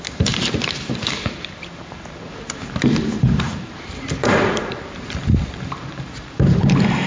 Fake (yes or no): yes